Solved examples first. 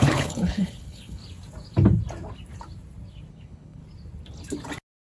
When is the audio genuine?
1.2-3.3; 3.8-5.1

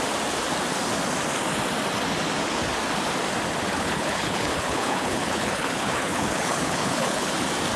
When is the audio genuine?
0.0-3.7; 7.3-7.8

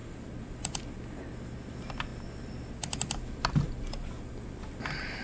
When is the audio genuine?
0.0-5.2

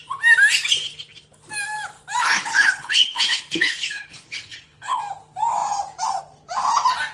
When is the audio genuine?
0.0-2.2; 5.0-7.1

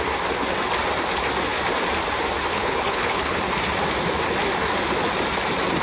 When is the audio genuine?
0.0-2.5; 3.4-5.8

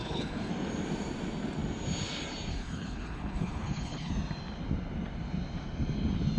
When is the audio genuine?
0.5-2.5; 4.1-6.4

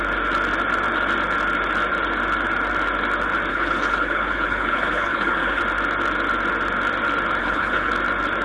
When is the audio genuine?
0.0-3.5; 5.6-7.4; 7.9-8.4

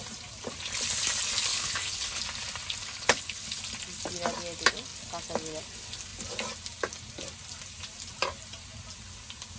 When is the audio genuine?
0.0-1.5; 2.2-2.8; 3.6-9.6